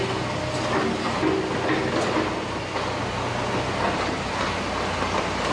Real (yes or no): yes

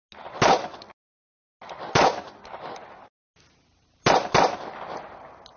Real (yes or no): yes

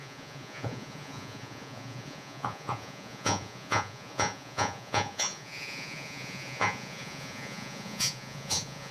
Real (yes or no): no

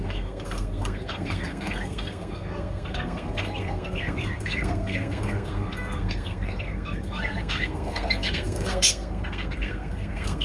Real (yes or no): no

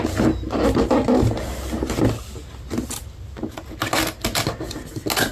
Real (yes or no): yes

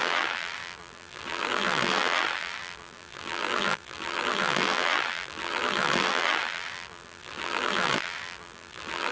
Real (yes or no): no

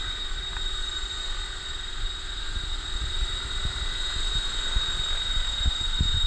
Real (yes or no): no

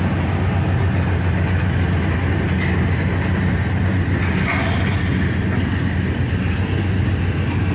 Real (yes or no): yes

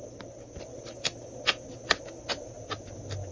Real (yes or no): yes